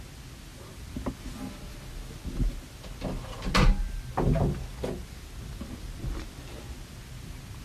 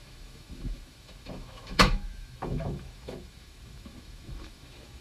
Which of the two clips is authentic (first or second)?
first